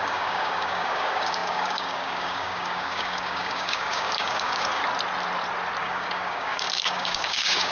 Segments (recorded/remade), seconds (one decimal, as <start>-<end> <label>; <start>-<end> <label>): 0.0-4.8 remade; 4.8-5.8 recorded; 5.8-7.7 remade